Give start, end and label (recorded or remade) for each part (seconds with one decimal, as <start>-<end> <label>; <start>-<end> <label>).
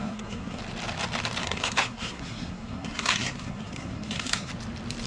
0.0-0.6 remade; 0.6-1.4 recorded; 1.4-4.5 remade; 4.5-5.1 recorded